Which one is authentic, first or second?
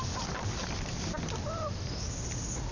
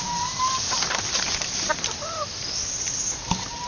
first